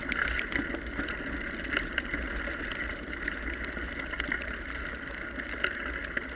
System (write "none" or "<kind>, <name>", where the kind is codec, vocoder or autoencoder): none